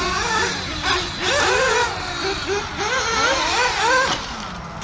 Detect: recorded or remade recorded